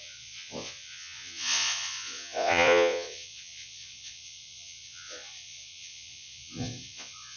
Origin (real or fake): fake